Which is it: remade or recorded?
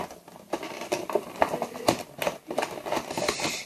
recorded